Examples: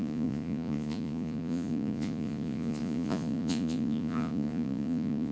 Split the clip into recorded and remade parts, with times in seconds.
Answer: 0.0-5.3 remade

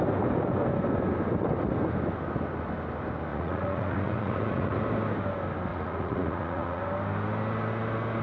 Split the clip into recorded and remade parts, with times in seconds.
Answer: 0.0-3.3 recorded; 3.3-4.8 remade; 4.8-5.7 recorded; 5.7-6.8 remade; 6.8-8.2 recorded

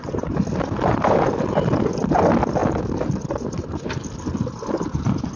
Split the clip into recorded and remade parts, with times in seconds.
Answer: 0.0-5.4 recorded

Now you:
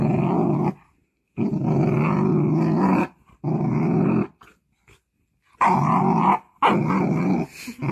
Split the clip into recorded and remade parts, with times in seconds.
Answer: 0.0-7.9 recorded

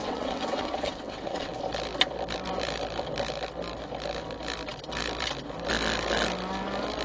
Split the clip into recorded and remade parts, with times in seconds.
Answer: 0.0-1.5 remade; 1.5-7.0 recorded

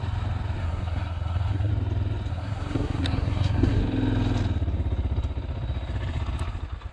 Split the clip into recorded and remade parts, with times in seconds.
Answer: 0.0-0.6 recorded; 0.6-1.7 remade; 1.7-2.3 recorded; 2.3-3.8 remade; 3.8-6.9 recorded

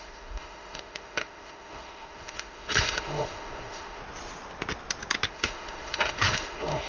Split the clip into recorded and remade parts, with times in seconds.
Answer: 0.0-4.0 remade; 4.0-5.3 recorded; 5.3-6.9 remade

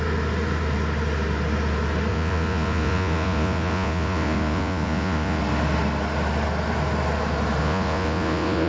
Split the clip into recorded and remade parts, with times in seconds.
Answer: 0.0-2.1 recorded; 2.1-5.4 remade; 5.4-7.6 recorded; 7.6-8.7 remade